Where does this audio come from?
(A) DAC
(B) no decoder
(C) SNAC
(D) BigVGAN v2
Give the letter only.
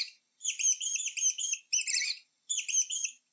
B